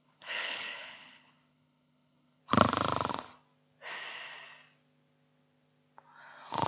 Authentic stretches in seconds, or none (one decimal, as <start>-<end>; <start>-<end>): 2.4-6.7